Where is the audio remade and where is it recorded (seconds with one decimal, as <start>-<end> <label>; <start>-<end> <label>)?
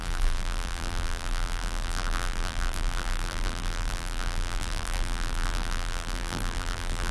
0.0-7.1 remade